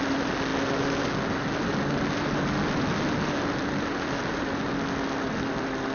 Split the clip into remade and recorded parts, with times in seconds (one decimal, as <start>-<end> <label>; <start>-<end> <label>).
0.0-5.9 recorded